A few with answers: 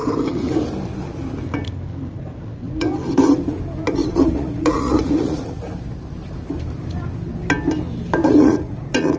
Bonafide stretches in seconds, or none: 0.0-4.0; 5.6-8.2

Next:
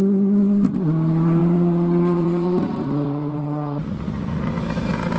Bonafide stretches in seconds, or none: 0.0-1.4; 4.5-5.2

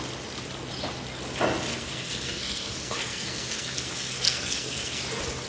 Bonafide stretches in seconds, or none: 0.0-1.7; 5.0-5.5

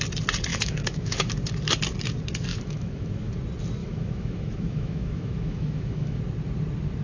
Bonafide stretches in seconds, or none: 0.0-0.5; 1.3-2.5; 3.3-3.8; 6.2-7.0

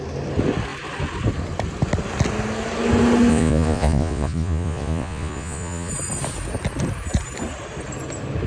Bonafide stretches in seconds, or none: 0.0-3.3; 5.9-8.5

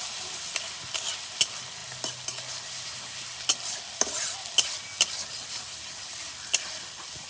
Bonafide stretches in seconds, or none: 0.0-7.3